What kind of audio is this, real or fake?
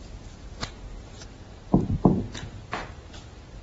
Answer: real